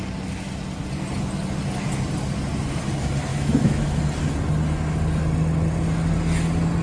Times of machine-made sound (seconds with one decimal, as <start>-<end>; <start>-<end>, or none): 3.3-4.0